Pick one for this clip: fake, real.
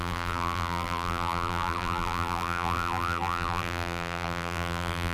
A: fake